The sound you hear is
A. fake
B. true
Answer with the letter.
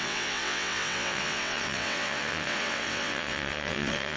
A